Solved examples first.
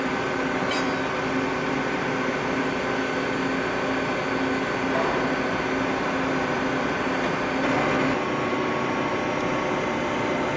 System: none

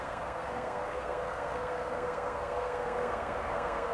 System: codec, SNAC